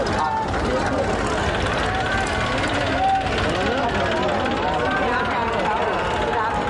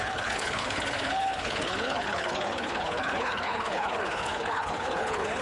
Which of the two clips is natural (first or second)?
first